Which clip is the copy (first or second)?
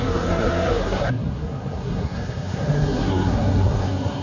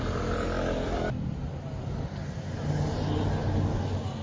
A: first